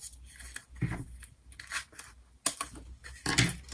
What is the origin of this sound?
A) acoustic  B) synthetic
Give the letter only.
A